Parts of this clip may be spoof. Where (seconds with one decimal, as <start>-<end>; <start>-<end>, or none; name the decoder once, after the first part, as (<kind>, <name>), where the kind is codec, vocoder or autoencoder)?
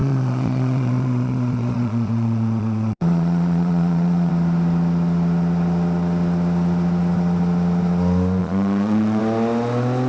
0.0-4.3 (vocoder, Vocos); 8.4-9.2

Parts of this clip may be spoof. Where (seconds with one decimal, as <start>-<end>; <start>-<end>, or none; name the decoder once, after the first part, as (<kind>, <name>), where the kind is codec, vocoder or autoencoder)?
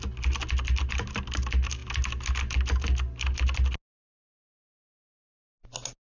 none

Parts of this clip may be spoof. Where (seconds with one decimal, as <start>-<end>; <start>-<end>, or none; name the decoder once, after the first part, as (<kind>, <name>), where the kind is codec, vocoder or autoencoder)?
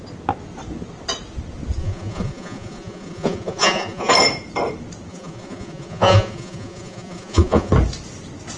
1.8-4.1 (vocoder, Vocos); 5.1-7.7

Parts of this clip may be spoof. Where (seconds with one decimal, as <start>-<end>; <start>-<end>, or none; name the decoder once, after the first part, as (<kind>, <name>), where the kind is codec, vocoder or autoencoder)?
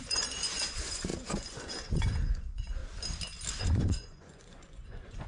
0.0-2.8 (vocoder, Vocos); 3.6-5.3